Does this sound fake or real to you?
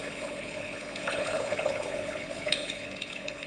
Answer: fake